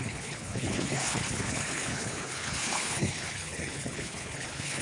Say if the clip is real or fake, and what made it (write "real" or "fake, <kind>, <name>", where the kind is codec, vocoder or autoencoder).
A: fake, codec, HILCodec